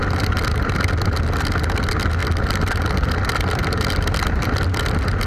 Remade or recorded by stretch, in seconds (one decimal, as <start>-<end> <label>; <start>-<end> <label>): 0.0-5.3 recorded

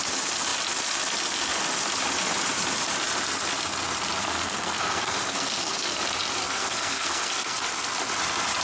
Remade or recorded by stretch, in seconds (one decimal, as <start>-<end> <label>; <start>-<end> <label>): 0.0-4.2 recorded; 4.2-6.0 remade; 6.0-6.4 recorded; 6.4-7.6 remade; 7.6-8.6 recorded

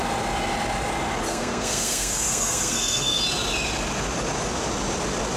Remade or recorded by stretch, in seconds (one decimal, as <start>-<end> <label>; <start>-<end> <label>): 0.0-1.3 recorded; 1.3-3.2 remade; 3.2-5.4 recorded